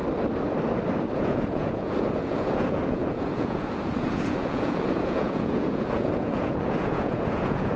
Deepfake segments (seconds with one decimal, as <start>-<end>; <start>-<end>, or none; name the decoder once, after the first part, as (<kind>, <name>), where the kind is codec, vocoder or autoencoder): 1.1-7.8 (vocoder, Vocos)